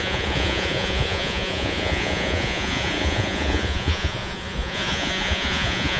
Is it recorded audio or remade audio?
remade